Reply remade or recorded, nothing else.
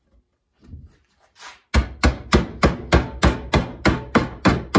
recorded